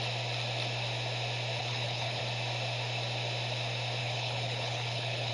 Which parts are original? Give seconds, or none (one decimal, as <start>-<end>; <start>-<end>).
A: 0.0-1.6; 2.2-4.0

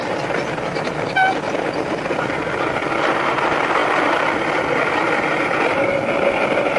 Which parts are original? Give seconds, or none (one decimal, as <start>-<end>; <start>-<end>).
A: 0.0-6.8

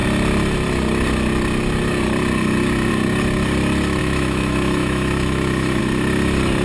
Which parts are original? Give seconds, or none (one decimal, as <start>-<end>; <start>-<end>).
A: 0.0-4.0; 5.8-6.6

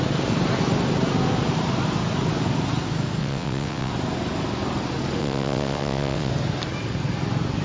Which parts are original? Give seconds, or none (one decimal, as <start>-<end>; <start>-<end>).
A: 0.0-3.2; 3.9-5.2; 6.3-7.6